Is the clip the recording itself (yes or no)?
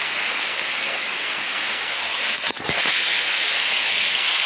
no